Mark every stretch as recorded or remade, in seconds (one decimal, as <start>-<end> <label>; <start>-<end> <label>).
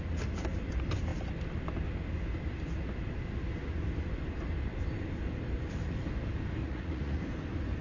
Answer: 0.0-6.6 recorded; 6.6-7.2 remade; 7.2-7.8 recorded